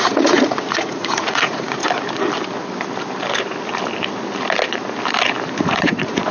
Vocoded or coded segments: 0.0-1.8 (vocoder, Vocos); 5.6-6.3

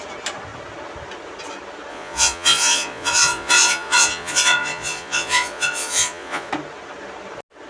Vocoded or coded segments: 1.9-6.5 (vocoder, Vocos)

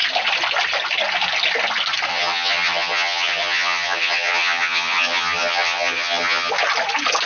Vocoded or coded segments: 2.1-6.5 (vocoder, HiFi-GAN)

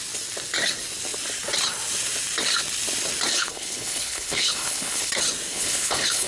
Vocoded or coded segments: 3.3-5.1 (codec, HILCodec); 5.5-6.3

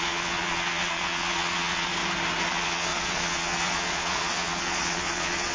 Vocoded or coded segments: 0.0-1.9 (vocoder, Vocos); 2.5-5.5

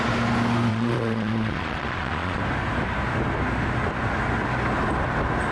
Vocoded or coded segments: 0.7-2.4 (vocoder, Vocos)

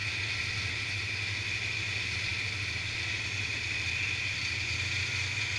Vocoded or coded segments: none

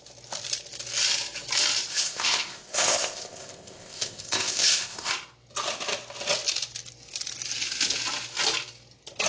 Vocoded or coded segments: 1.9-5.1 (codec, ZipCodec)